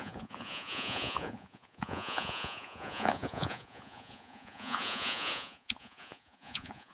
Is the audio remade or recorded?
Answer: remade